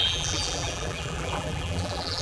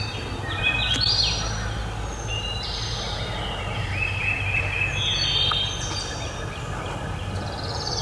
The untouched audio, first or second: second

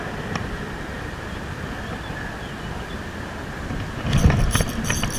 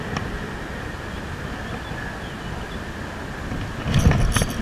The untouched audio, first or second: second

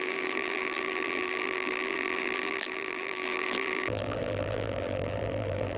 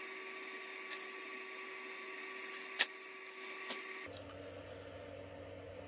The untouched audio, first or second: second